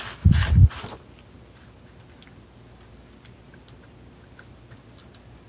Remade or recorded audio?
recorded